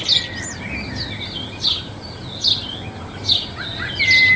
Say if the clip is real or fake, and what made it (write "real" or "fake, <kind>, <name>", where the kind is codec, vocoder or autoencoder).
real